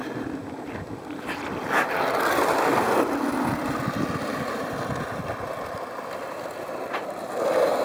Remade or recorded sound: recorded